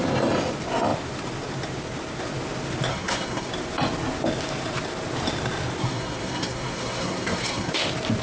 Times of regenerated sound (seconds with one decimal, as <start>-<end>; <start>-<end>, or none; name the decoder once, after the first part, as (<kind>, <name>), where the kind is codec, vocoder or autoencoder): 2.9-3.5 (codec, SNAC); 5.8-7.7